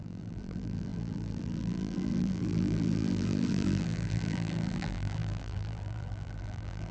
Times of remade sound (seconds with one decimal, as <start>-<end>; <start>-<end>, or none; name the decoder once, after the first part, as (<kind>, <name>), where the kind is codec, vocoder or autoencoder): 0.0-6.9 (vocoder, BigVGAN v2)